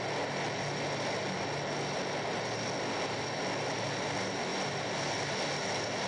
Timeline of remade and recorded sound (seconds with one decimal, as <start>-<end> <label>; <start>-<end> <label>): 0.0-4.5 recorded; 4.5-5.1 remade; 5.1-6.1 recorded